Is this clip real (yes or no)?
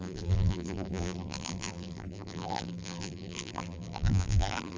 no